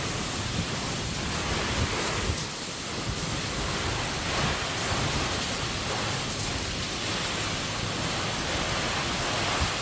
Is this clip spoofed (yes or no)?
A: no